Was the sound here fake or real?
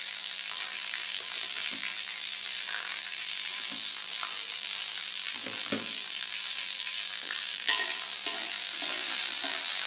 fake